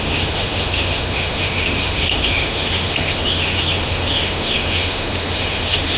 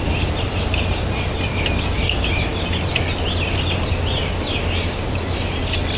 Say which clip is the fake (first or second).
first